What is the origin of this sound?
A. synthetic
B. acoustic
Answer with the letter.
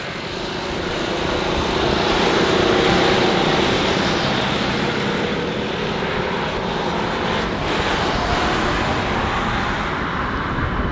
B